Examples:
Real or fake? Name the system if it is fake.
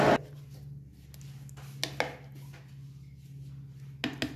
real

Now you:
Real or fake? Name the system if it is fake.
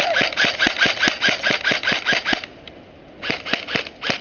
real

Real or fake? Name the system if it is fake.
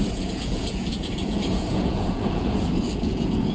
fake, vocoder, Vocos